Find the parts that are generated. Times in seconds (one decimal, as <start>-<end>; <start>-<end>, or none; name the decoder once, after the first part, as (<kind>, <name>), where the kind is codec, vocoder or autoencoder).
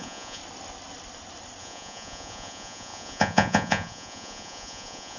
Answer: 0.0-0.4 (vocoder, Vocos); 1.6-5.2